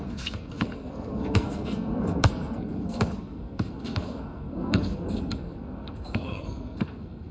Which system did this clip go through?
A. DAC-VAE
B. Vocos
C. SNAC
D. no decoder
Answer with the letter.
C